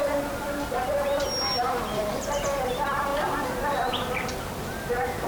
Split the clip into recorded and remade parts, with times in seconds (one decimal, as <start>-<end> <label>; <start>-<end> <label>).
0.0-5.3 recorded